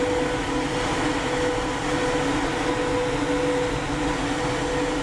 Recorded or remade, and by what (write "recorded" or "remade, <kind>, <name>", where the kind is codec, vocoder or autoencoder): recorded